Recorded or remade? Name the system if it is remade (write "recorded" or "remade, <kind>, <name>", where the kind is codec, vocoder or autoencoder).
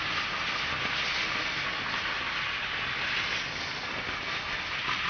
recorded